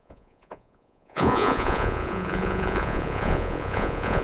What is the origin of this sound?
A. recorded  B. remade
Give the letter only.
B